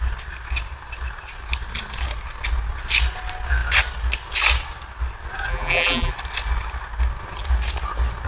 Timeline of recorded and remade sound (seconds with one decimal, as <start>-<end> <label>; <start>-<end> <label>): 0.0-5.5 recorded; 5.5-6.1 remade; 6.1-8.3 recorded